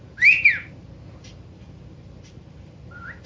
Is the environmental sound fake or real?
real